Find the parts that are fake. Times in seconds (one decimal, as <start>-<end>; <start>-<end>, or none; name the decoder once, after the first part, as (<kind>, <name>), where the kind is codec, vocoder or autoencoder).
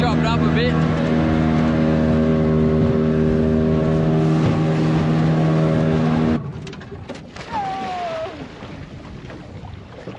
none